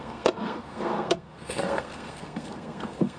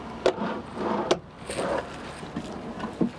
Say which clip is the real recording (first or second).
second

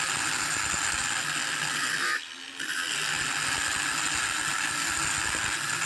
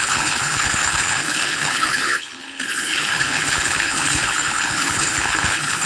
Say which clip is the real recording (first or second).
first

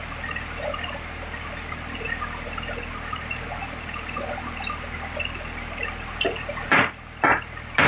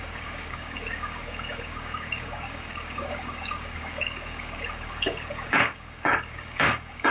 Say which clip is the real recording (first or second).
first